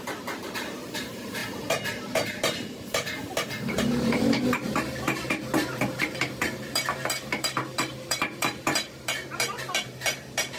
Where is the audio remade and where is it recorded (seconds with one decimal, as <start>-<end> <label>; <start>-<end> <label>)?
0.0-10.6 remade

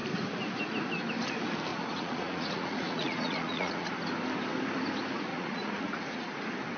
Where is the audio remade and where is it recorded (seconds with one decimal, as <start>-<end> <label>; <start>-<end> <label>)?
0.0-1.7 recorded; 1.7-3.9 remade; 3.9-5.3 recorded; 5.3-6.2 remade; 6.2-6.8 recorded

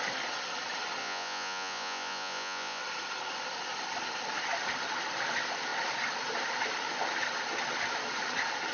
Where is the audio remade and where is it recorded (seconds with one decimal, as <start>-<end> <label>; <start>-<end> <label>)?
0.0-1.0 recorded; 1.0-2.8 remade; 2.8-8.7 recorded

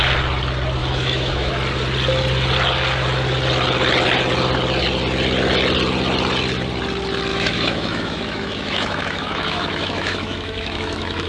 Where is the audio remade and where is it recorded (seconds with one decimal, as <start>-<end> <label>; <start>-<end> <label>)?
0.0-0.8 recorded; 0.8-1.5 remade; 1.5-7.3 recorded; 7.3-11.3 remade